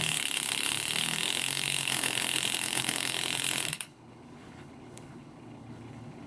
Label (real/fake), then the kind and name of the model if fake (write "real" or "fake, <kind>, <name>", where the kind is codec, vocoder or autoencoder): fake, codec, HILCodec